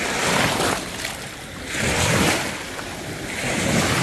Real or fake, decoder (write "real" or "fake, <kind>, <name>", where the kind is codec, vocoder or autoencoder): real